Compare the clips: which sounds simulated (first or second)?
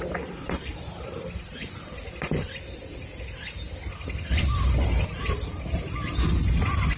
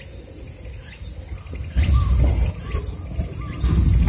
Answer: first